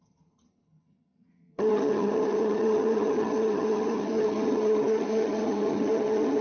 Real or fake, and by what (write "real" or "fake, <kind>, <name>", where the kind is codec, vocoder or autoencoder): fake, vocoder, HiFi-GAN